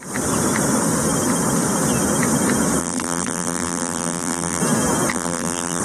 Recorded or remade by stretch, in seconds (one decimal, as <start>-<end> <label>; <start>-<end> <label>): 0.0-2.8 recorded; 2.8-4.6 remade; 4.6-5.1 recorded; 5.1-5.8 remade